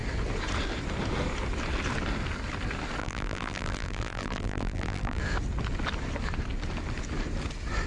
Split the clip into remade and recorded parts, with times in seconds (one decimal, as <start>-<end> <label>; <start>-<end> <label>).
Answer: 0.0-3.0 recorded; 3.0-5.2 remade; 5.2-7.9 recorded